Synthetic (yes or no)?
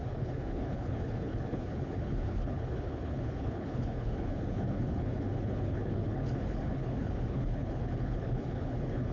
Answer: yes